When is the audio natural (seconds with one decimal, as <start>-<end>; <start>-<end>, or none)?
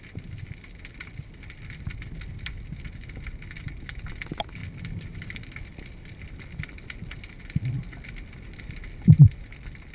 0.0-9.9